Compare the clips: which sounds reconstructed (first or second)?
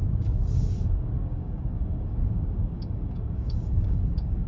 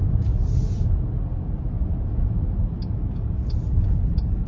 first